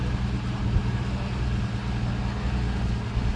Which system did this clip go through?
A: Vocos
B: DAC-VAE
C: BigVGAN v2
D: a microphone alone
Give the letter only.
D